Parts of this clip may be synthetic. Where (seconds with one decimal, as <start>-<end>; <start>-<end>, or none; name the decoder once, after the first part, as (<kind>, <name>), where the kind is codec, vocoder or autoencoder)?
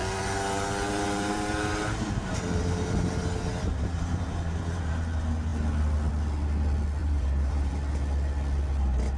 0.0-4.9 (vocoder, BigVGAN v2); 7.0-7.7